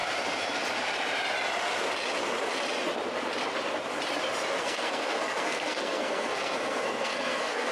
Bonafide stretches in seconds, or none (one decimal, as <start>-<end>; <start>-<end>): 0.0-4.6